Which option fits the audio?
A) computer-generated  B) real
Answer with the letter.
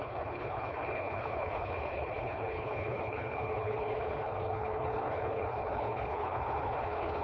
A